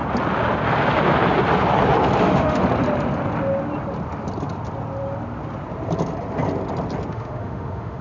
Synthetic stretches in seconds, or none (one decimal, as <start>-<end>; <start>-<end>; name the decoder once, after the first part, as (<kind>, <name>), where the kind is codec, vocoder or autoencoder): 2.2-2.6 (autoencoder, DAC-VAE); 7.1-8.0